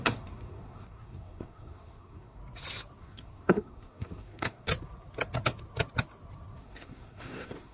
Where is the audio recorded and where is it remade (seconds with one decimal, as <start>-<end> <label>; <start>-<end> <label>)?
0.0-2.4 remade; 2.4-3.0 recorded; 3.0-4.7 remade; 4.7-6.6 recorded; 6.6-7.7 remade